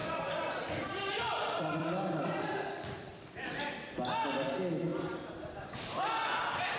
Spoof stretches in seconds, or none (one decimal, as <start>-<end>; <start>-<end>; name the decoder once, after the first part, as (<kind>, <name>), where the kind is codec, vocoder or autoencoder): 0.0-4.1 (vocoder, BigVGAN v2)